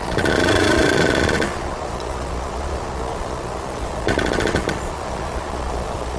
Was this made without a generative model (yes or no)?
no